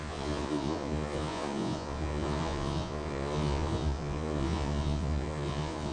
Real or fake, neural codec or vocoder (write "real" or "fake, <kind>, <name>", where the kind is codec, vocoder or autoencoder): fake, vocoder, Vocos